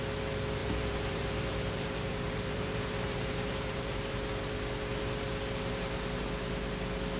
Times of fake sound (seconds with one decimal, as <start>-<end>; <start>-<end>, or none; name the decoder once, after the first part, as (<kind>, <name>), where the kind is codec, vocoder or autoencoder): 0.6-4.2 (vocoder, BigVGAN v2)